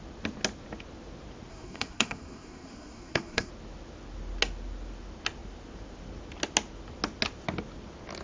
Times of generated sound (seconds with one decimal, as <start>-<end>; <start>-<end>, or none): 1.5-3.5

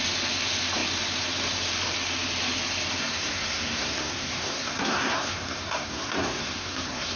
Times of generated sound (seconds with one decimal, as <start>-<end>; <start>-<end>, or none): 3.0-7.2

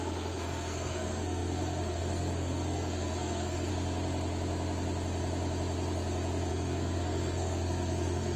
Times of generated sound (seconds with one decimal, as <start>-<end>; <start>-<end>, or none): 0.0-3.7; 6.5-8.4

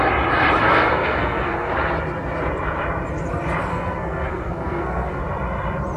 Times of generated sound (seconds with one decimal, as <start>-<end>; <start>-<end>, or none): 0.6-1.7; 3.7-5.2

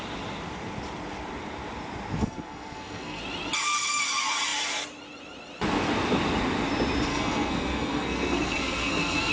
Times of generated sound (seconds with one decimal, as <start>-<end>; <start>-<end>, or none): 2.2-3.2; 7.1-9.3

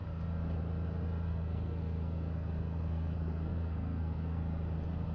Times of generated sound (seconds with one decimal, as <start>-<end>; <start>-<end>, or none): 1.3-4.4

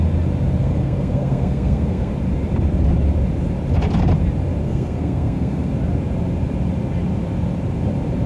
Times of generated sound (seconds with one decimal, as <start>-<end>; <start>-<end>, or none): 0.6-2.1; 4.6-5.7